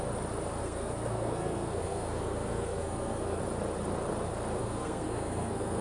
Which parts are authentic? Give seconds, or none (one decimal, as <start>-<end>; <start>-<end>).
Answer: 0.0-0.6; 3.4-4.6